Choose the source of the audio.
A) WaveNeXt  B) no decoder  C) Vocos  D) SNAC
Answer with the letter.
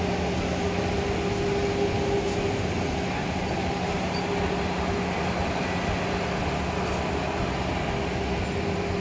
B